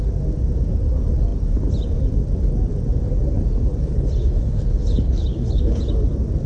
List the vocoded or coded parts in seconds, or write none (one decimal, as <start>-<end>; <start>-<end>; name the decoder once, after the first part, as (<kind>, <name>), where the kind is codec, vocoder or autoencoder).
3.7-5.8 (codec, HILCodec)